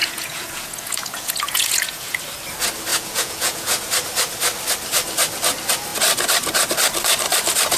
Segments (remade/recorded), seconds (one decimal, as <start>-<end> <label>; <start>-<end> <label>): 0.0-2.2 remade; 2.2-2.9 recorded; 2.9-3.9 remade; 3.9-7.8 recorded